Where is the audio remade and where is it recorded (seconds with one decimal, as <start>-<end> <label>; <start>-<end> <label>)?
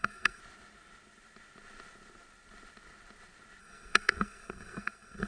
0.0-0.4 remade; 0.4-3.6 recorded; 3.6-5.3 remade